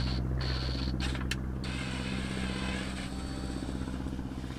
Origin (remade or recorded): recorded